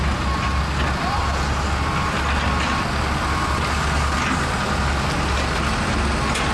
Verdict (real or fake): real